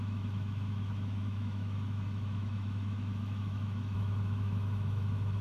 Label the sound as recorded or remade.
remade